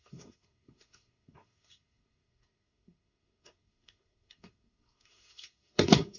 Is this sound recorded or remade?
remade